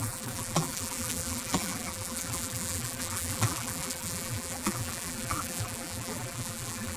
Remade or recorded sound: remade